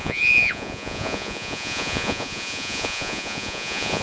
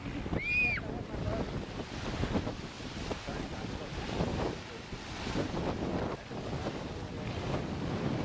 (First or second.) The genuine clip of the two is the second